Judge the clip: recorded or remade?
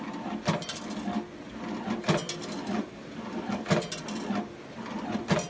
recorded